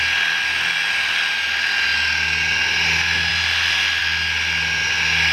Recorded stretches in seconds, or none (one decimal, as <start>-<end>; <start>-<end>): 0.0-5.3